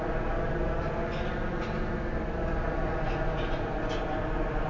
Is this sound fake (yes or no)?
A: no